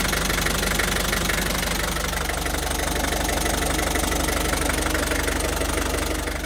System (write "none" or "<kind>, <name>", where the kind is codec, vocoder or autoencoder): none